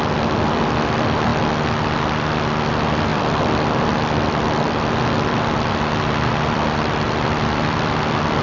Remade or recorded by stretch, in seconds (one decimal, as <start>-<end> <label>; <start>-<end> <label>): 0.0-3.1 recorded; 3.1-8.4 remade